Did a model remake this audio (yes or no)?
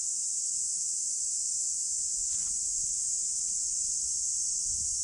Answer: no